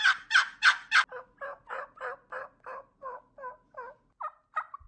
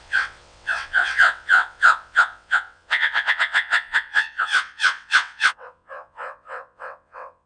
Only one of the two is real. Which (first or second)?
first